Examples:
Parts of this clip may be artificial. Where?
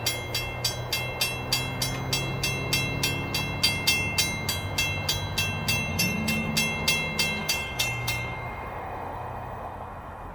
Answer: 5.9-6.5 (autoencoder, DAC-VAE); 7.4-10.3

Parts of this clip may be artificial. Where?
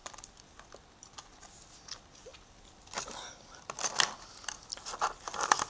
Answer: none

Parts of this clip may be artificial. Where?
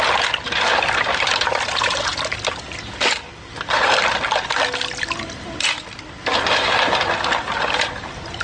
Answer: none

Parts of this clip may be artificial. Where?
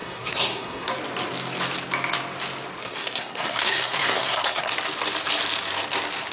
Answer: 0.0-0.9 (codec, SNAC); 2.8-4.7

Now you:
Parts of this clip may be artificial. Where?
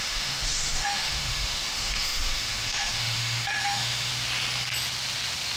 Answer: 0.0-4.1 (autoencoder, DAC-VAE)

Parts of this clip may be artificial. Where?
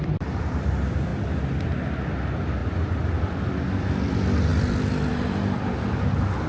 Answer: 0.0-1.1 (vocoder, BigVGAN v2); 1.8-6.5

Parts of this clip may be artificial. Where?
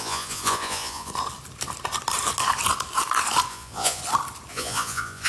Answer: 0.0-1.1 (vocoder, Vocos); 3.5-4.0; 4.5-5.3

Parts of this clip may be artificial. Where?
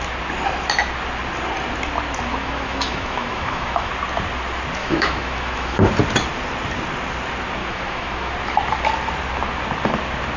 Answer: 2.4-3.9 (autoencoder, DAC-VAE); 4.8-5.9; 7.6-8.3